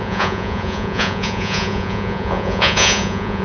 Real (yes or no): no